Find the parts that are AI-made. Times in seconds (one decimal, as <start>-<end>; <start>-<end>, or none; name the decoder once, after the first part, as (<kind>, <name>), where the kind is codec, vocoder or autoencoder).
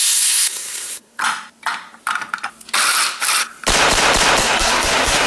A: 0.0-1.2 (codec, SNAC); 4.4-5.3